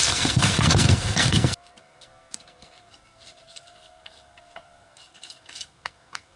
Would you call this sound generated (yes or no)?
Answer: yes